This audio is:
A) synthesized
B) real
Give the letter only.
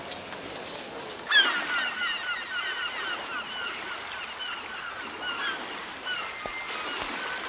B